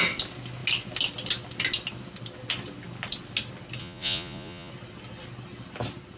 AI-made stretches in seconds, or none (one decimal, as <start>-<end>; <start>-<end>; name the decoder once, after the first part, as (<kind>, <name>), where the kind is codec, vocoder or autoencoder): 3.8-4.7 (vocoder, Vocos)